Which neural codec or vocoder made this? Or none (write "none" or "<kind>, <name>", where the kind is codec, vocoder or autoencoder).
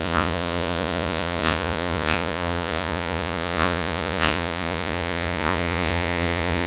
vocoder, Vocos